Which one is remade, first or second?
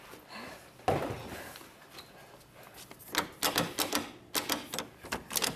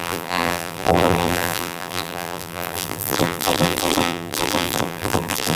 second